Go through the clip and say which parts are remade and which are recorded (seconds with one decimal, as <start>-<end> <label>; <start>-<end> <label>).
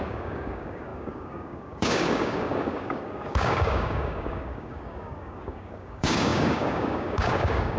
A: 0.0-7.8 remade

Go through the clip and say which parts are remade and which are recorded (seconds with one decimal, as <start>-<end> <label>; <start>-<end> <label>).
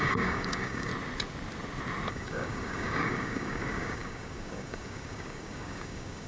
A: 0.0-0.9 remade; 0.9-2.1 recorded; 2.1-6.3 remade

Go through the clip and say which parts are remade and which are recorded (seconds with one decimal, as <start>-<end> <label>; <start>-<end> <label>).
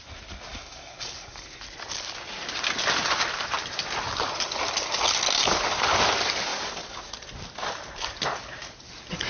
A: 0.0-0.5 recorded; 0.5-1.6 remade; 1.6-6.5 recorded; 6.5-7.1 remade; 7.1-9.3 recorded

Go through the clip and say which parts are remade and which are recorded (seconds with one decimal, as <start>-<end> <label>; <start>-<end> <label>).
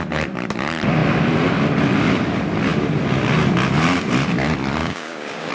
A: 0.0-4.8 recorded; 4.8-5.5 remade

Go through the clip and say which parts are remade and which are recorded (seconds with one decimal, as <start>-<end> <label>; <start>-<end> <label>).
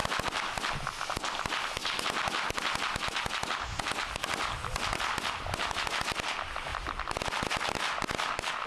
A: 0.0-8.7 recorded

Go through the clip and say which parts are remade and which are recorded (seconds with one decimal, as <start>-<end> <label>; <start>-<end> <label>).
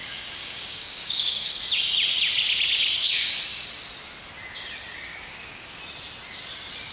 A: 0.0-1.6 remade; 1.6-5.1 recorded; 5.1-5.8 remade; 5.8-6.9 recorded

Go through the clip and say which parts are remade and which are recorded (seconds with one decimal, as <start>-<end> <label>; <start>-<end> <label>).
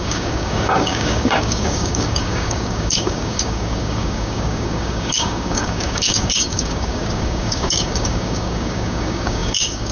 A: 0.0-9.9 remade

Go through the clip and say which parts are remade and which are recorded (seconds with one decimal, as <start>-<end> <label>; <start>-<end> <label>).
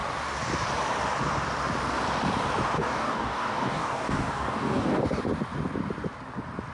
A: 0.0-2.8 recorded; 2.8-5.2 remade; 5.2-6.7 recorded